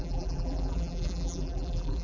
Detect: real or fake fake